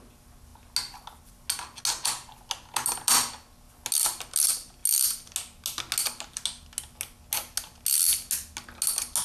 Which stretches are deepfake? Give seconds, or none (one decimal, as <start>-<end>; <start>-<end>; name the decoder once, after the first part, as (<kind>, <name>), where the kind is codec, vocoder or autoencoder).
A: none

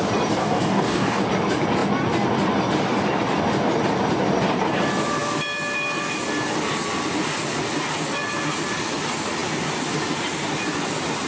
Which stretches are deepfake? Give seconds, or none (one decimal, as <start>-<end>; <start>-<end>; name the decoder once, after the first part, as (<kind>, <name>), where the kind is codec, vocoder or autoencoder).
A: 0.4-1.2 (codec, DAC)

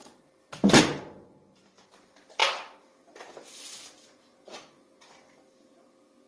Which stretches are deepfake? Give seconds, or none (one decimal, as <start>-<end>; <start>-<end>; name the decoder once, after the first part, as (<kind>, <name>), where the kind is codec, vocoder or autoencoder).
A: none

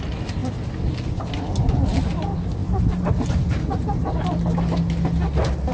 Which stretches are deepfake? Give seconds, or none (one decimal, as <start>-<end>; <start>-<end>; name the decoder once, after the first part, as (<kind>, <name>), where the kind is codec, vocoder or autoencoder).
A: 2.6-4.5 (vocoder, BigVGAN v2)

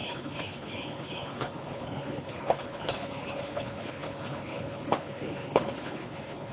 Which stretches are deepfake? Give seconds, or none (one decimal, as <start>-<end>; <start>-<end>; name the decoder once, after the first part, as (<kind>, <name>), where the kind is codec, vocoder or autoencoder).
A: 0.0-6.5 (codec, HILCodec)

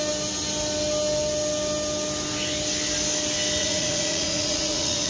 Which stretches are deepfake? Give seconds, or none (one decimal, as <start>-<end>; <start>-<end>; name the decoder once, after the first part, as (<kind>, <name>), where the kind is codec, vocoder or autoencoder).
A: 3.6-5.1 (vocoder, Vocos)